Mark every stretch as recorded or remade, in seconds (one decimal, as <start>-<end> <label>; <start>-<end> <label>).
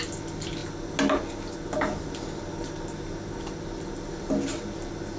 0.0-5.2 recorded